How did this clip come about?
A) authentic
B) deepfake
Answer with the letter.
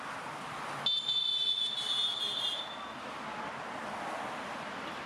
A